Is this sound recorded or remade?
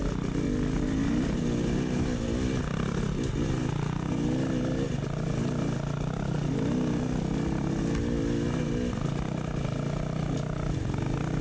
recorded